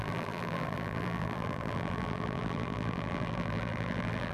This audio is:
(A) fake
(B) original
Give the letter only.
A